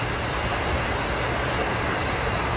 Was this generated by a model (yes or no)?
no